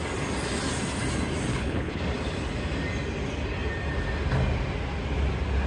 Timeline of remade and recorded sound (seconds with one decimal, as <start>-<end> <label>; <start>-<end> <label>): 0.0-1.5 recorded; 1.5-2.0 remade; 2.0-5.7 recorded